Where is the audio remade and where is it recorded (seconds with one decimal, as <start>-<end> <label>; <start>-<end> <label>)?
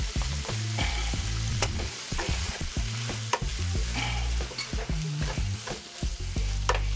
0.0-1.5 recorded; 1.5-2.7 remade; 2.7-7.0 recorded